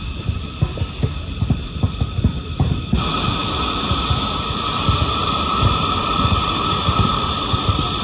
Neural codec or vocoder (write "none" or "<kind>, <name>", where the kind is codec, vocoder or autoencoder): vocoder, BigVGAN v2